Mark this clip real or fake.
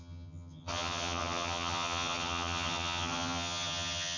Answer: fake